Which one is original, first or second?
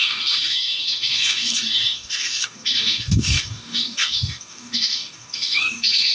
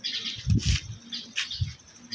second